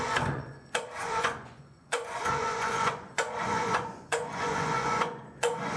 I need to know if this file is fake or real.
fake